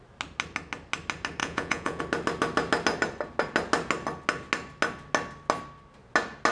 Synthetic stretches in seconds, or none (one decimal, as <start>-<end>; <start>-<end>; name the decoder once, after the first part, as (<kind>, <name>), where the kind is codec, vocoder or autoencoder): 1.4-2.0 (vocoder, Vocos)

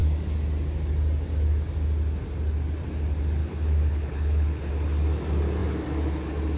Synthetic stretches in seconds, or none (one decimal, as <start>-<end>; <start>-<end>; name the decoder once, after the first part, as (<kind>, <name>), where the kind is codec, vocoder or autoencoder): 3.4-4.7 (codec, HILCodec)